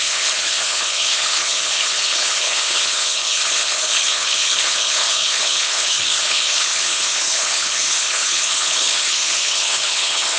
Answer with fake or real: fake